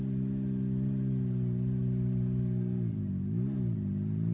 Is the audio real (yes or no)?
yes